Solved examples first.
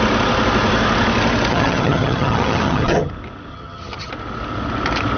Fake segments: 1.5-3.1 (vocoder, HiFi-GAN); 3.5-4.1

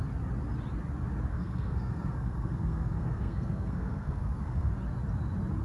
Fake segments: 1.3-4.7 (codec, SNAC)

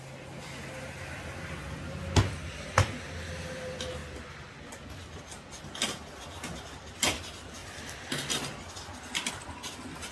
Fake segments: none

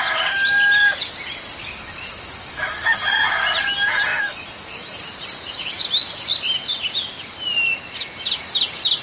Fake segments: 1.6-2.9 (autoencoder, DAC-VAE); 4.1-5.0

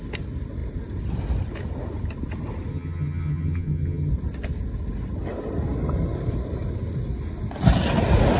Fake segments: 2.7-4.1 (vocoder, HiFi-GAN)

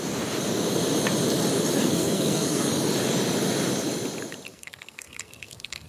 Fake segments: 1.8-2.7 (codec, SNAC); 4.5-5.9

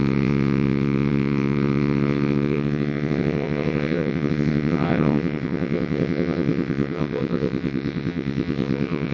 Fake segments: 0.0-9.1 (vocoder, WaveNeXt)